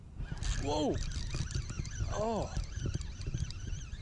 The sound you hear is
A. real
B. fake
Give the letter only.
A